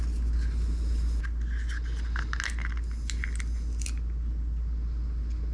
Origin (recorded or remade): recorded